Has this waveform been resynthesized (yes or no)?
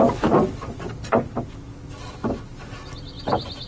no